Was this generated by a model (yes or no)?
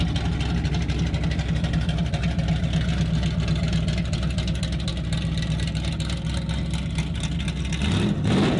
no